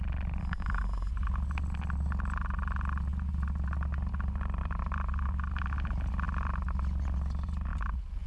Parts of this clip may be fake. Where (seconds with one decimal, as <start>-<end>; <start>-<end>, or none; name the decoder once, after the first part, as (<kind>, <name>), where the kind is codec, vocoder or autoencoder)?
0.4-1.1 (codec, DAC)